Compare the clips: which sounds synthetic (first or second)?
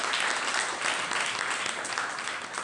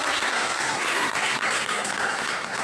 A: second